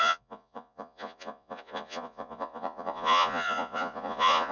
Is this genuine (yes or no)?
no